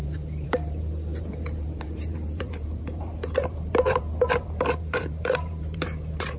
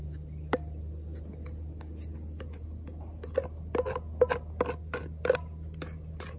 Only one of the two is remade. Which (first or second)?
first